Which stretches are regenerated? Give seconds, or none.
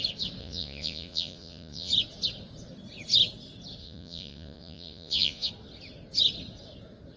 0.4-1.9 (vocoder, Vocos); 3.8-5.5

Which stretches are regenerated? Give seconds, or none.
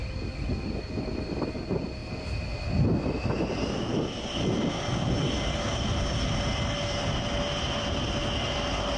none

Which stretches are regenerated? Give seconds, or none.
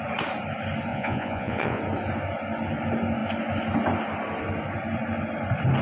0.9-1.8 (vocoder, Vocos)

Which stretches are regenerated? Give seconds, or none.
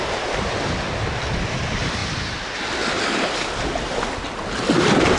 none